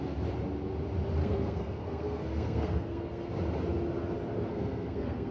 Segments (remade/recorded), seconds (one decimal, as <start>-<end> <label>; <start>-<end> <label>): 0.0-1.2 recorded; 1.2-3.3 remade; 3.3-4.5 recorded; 4.5-5.3 remade